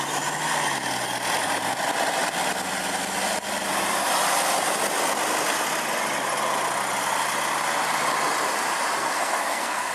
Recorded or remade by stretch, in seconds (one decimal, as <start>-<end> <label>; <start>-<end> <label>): 0.0-9.0 recorded; 9.0-9.9 remade